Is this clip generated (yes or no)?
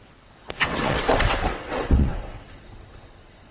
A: yes